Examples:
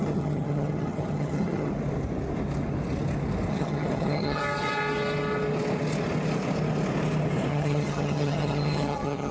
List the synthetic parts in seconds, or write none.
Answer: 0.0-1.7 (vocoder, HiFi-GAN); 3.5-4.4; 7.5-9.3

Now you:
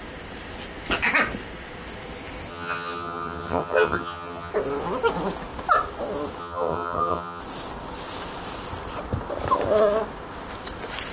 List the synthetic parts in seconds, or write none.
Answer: 2.5-4.5 (vocoder, HiFi-GAN); 6.4-7.4

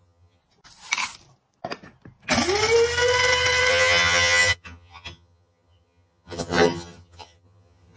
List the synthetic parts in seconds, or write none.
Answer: 0.0-0.4 (vocoder, HiFi-GAN); 3.7-8.0

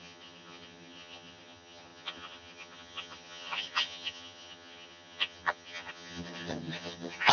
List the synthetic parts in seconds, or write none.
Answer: 0.0-7.3 (vocoder, HiFi-GAN)

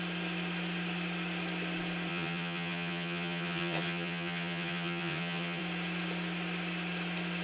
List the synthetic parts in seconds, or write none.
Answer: 2.1-5.6 (vocoder, HiFi-GAN)

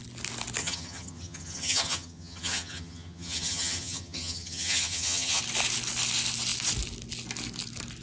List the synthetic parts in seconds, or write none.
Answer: 0.6-5.4 (vocoder, HiFi-GAN)